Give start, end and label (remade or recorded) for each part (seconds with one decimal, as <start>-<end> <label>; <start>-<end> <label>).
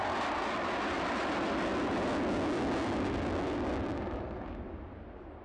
0.0-5.4 recorded